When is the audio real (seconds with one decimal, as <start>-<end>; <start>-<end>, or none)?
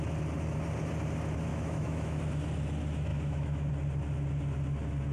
0.0-1.5; 2.2-3.1; 3.7-5.1